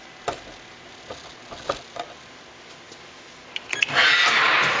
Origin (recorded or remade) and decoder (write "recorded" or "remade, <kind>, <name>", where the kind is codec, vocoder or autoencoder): recorded